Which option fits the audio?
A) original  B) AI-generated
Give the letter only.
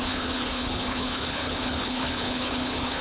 B